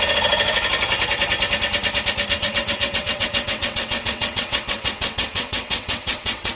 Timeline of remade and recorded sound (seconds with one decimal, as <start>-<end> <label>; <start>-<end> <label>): 0.0-2.4 recorded; 2.4-6.5 remade